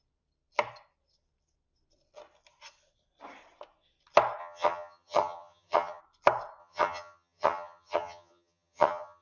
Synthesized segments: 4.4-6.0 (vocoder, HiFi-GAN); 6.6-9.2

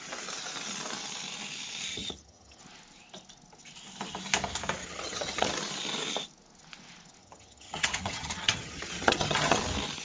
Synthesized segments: 1.9-2.6 (vocoder, HiFi-GAN); 4.8-5.5; 7.2-9.6

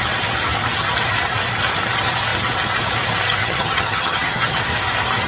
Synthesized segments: 3.4-4.6 (vocoder, HiFi-GAN)

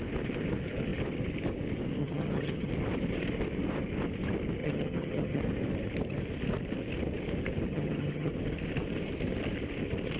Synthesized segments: 2.0-2.7 (vocoder, HiFi-GAN); 4.6-5.4; 7.7-8.3